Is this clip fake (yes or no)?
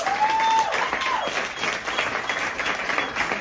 no